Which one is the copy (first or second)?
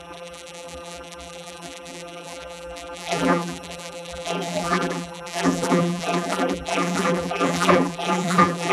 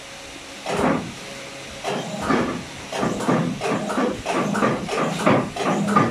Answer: first